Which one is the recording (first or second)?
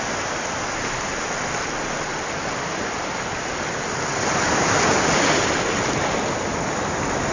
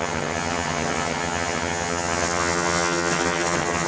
first